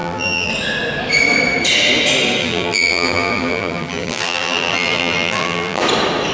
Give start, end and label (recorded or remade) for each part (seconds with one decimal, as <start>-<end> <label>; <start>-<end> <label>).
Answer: 0.0-0.5 remade; 0.5-2.4 recorded; 2.4-5.8 remade; 5.8-6.3 recorded